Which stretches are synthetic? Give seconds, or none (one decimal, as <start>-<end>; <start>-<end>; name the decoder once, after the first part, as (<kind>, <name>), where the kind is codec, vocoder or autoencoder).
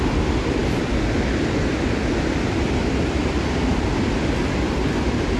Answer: none